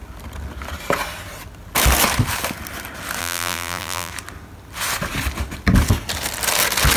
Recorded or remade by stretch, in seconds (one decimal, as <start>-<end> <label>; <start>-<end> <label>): 0.0-3.2 recorded; 3.2-4.1 remade; 4.1-7.0 recorded